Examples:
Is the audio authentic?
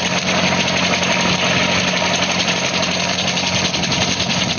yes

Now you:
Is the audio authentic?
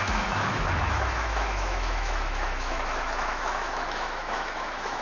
no